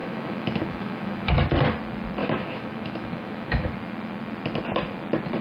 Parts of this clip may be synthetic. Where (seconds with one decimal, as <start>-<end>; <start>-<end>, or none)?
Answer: 0.0-1.3; 2.2-3.7